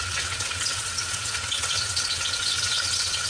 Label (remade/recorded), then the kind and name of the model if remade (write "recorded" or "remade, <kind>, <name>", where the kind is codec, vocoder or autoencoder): remade, vocoder, WaveNeXt